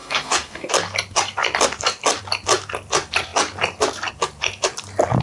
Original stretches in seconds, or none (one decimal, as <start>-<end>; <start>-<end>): 0.7-5.2